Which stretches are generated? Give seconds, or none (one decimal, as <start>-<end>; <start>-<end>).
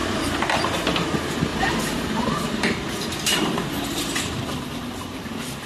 0.0-0.9; 1.5-4.2